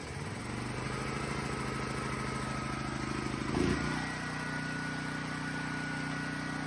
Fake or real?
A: real